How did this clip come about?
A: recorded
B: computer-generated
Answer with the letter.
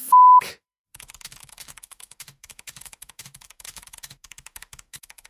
B